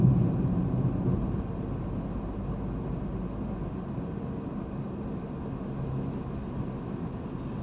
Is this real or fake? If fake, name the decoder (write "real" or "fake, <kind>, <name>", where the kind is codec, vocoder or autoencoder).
real